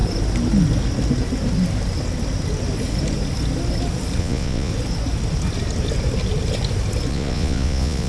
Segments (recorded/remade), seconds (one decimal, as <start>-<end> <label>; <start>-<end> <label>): 0.0-4.2 recorded; 4.2-4.7 remade; 4.7-7.1 recorded; 7.1-8.1 remade

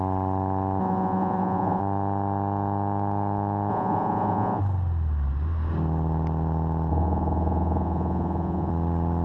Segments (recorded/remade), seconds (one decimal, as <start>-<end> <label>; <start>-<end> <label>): 0.0-0.8 recorded; 0.8-1.8 remade; 1.8-3.7 recorded; 3.7-4.6 remade; 4.6-6.9 recorded; 6.9-8.7 remade; 8.7-9.2 recorded

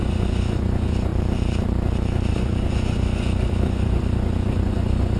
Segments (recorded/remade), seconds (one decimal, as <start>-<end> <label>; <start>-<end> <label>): 0.0-1.1 remade; 1.1-2.3 recorded; 2.3-5.2 remade

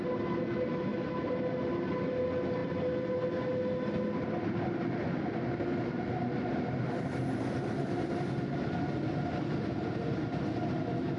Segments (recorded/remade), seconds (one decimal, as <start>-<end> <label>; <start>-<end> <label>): 0.0-11.2 recorded

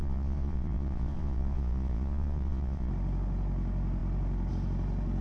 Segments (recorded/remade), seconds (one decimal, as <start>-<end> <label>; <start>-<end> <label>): 0.0-2.9 remade; 2.9-5.2 recorded

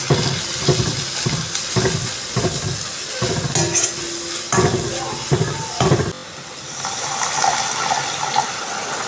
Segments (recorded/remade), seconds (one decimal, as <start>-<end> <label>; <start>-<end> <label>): 0.0-9.1 recorded